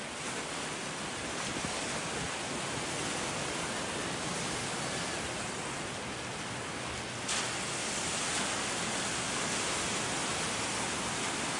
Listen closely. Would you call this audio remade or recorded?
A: recorded